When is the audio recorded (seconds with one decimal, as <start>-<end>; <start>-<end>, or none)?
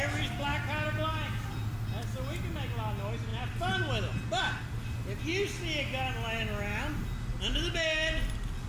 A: 0.0-8.7